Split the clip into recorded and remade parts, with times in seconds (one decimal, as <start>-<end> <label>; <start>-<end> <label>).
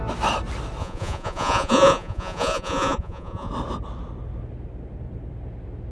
0.0-0.8 recorded; 0.8-3.5 remade; 3.5-5.9 recorded